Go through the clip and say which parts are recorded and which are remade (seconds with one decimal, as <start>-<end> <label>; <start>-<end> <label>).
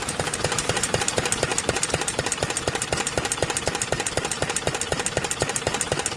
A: 0.0-1.1 remade; 1.1-1.5 recorded; 1.5-2.3 remade; 2.3-6.2 recorded